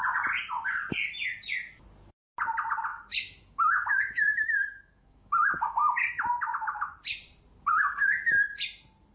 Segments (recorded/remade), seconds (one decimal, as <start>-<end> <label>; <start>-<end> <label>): 0.0-2.9 recorded; 2.9-6.9 remade; 6.9-9.1 recorded